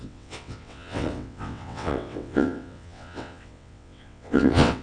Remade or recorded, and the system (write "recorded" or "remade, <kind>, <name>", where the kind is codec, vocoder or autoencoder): remade, vocoder, WaveNeXt